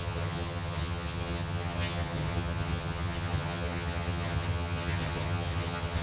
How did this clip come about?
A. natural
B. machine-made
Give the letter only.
B